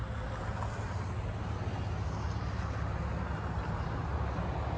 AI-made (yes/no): no